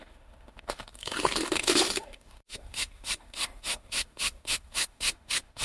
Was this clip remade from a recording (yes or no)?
yes